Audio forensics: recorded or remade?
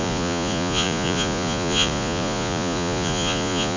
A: remade